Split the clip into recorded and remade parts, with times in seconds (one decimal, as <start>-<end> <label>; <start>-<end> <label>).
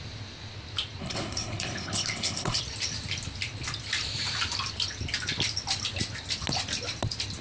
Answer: 0.0-1.0 recorded; 1.0-2.6 remade; 2.6-7.4 recorded